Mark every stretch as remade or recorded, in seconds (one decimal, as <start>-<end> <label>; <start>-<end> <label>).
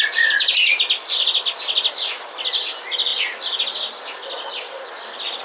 0.0-5.4 recorded